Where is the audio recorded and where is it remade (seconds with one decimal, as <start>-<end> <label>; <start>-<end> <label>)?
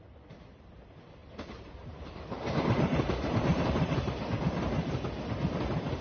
0.0-1.2 recorded; 1.2-4.2 remade; 4.2-6.0 recorded